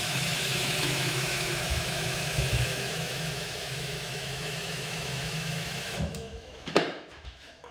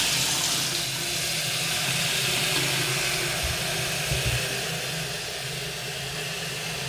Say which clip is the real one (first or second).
second